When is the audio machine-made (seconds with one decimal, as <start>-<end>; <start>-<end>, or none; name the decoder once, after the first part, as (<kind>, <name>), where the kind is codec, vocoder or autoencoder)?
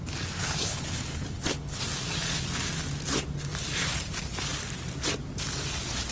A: 0.4-1.8 (codec, HILCodec)